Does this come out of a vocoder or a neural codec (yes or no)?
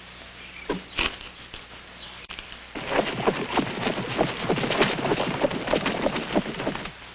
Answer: no